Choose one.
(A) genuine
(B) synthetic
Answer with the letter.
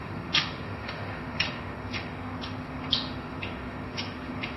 B